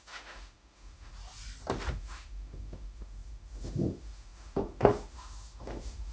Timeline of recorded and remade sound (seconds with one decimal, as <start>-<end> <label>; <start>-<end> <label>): 0.0-1.1 remade; 1.1-1.9 recorded; 1.9-6.1 remade